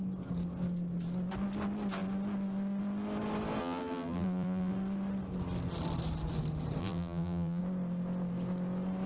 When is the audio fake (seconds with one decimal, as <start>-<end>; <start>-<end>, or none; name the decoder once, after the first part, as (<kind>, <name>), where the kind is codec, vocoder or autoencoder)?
3.6-4.7 (vocoder, BigVGAN v2); 6.8-7.6